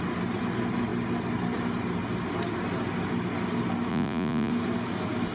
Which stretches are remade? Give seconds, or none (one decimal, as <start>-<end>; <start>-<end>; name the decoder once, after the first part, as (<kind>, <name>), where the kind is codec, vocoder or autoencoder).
3.9-4.5 (vocoder, Vocos)